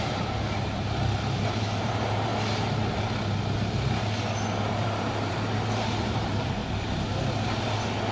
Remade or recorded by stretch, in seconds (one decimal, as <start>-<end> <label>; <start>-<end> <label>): 0.0-2.3 remade; 2.3-4.7 recorded; 4.7-6.6 remade; 6.6-8.1 recorded